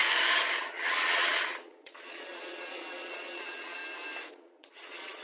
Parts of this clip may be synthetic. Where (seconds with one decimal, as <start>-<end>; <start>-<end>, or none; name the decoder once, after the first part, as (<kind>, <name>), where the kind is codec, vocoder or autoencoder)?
0.6-3.8 (vocoder, Vocos); 4.3-5.2